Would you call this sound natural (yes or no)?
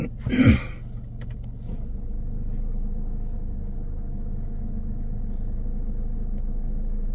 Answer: yes